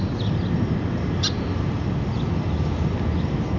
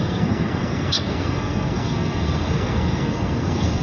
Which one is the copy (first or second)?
second